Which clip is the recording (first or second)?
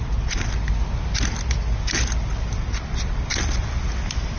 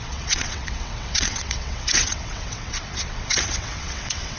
first